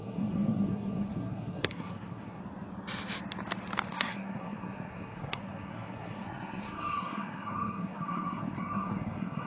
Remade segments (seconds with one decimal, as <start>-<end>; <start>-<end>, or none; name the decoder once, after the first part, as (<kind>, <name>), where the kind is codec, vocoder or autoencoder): 0.0-2.4 (codec, SNAC); 3.9-9.5